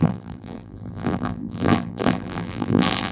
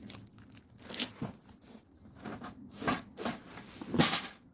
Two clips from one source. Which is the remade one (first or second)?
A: first